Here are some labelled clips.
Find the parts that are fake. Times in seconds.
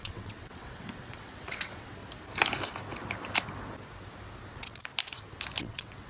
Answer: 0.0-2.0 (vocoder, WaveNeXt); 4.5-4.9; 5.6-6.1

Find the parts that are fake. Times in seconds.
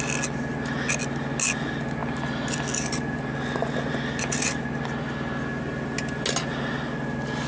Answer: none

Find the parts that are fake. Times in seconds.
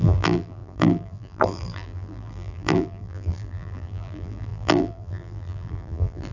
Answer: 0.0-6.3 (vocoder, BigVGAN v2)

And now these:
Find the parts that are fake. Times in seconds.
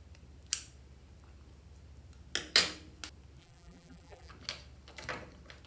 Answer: 3.4-4.3 (vocoder, BigVGAN v2)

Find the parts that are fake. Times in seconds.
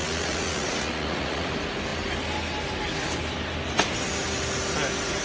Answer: 0.0-1.5 (vocoder, Vocos)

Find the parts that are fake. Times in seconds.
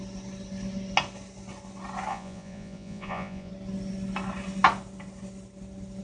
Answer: 2.1-3.5 (vocoder, Vocos)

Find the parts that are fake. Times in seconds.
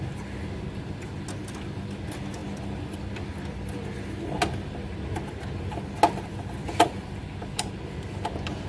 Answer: none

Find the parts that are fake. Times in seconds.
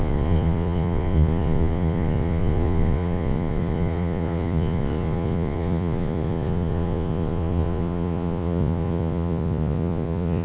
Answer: 0.0-10.4 (vocoder, Vocos)